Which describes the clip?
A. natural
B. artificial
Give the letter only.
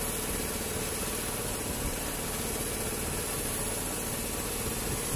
A